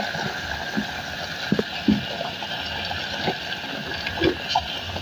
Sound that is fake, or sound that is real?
real